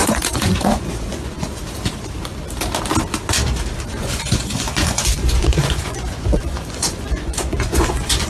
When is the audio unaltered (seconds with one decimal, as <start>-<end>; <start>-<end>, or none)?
1.6-3.9